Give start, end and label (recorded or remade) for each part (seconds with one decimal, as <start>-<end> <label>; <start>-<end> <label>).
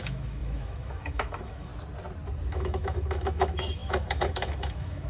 0.0-1.7 remade; 1.7-2.5 recorded; 2.5-5.1 remade